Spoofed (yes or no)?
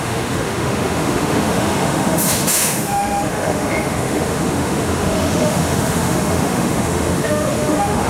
yes